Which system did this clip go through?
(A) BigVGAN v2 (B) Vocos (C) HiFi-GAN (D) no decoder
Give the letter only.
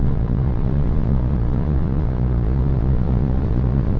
B